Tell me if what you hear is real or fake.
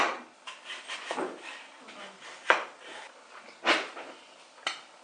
real